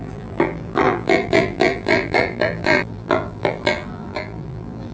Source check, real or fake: fake